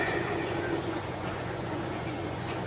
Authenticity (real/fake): fake